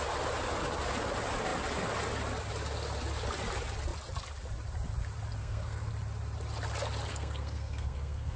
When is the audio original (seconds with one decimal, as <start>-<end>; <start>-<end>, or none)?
0.0-5.4; 5.9-7.1

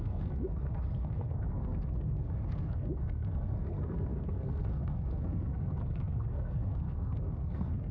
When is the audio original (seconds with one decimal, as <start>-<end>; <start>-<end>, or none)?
none

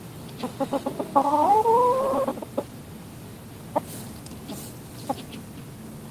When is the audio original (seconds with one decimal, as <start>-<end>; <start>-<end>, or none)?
0.0-1.1; 1.7-6.1

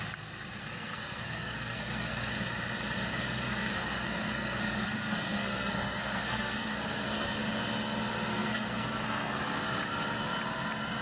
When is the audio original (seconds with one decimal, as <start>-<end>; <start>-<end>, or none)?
0.0-0.6; 2.3-3.1; 7.4-8.3; 9.4-11.0